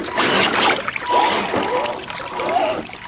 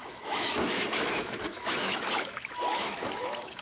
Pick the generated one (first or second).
second